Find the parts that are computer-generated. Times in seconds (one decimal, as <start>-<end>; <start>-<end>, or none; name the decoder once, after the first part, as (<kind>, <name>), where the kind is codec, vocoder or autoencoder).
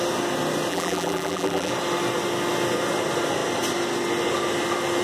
0.7-1.7 (vocoder, BigVGAN v2)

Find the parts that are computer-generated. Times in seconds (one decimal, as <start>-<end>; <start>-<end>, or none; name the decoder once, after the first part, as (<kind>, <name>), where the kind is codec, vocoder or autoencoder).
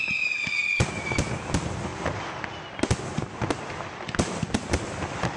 none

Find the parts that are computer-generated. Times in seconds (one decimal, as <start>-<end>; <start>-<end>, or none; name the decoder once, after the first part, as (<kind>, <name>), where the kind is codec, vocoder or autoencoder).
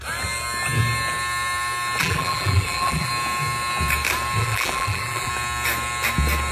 2.0-3.1 (vocoder, BigVGAN v2); 4.4-5.3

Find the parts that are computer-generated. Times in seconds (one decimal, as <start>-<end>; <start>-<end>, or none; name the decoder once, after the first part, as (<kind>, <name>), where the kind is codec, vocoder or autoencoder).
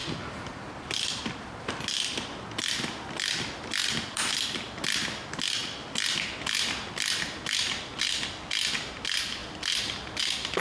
3.8-4.3 (vocoder, BigVGAN v2)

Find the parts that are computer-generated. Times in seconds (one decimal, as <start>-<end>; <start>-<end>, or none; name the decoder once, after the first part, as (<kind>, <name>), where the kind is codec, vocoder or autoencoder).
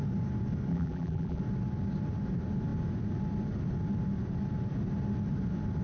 0.7-1.4 (vocoder, BigVGAN v2)